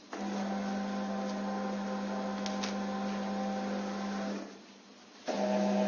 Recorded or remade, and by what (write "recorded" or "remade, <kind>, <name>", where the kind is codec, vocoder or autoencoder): recorded